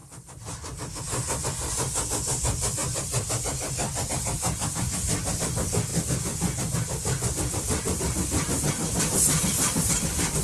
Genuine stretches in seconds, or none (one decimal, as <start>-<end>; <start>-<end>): 0.0-10.4